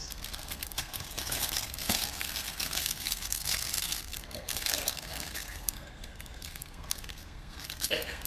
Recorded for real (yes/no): no